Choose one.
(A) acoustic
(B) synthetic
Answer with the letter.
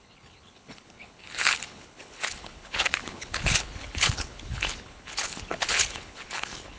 B